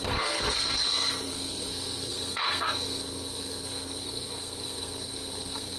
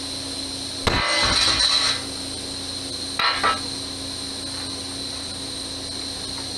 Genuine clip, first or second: second